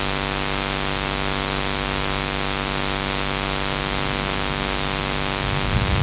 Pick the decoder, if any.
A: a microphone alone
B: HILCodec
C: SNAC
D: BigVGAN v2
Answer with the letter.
A